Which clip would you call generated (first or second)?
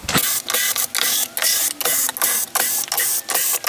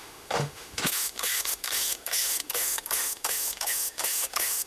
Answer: second